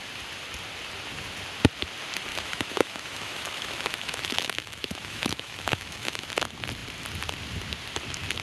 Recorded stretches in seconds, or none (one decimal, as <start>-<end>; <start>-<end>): 0.0-2.3; 6.3-8.4